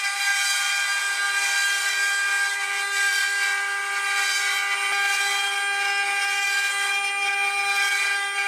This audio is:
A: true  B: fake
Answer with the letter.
A